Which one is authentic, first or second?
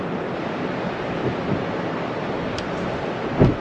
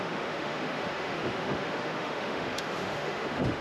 first